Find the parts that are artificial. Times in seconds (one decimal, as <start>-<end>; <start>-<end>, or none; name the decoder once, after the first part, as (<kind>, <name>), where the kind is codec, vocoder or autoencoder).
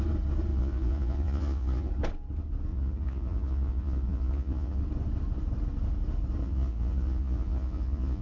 0.5-1.9 (vocoder, Vocos); 2.7-4.8; 6.4-8.2